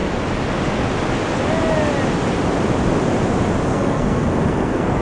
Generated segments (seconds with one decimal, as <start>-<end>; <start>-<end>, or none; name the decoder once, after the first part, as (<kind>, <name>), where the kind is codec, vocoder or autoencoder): 3.7-5.0 (codec, SNAC)